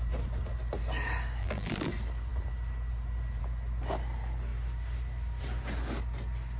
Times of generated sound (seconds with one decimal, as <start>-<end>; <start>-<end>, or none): 1.4-1.9